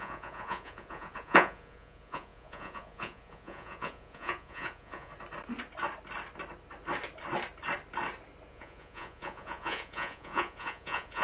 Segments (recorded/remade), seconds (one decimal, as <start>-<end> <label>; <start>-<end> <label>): 0.0-5.1 remade; 5.1-8.5 recorded; 8.5-11.2 remade